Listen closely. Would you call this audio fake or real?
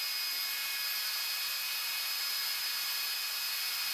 real